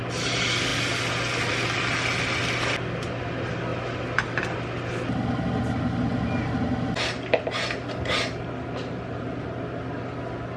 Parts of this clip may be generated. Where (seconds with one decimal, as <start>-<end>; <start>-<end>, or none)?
none